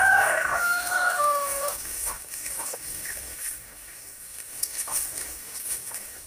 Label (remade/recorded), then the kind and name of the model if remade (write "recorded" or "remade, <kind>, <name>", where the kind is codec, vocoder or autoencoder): remade, codec, DAC